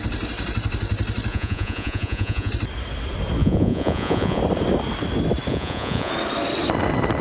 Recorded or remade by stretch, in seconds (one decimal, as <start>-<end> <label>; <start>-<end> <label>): 0.0-1.3 recorded; 1.3-2.5 remade; 2.5-3.4 recorded; 3.4-4.4 remade; 4.4-5.5 recorded; 5.5-6.1 remade; 6.1-7.2 recorded